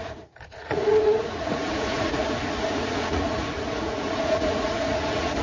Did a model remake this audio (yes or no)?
yes